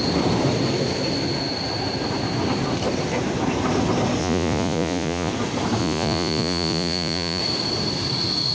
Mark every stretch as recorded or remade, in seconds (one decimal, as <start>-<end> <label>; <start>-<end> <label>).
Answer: 0.0-4.2 recorded; 4.2-5.3 remade; 5.3-5.8 recorded; 5.8-7.4 remade; 7.4-8.5 recorded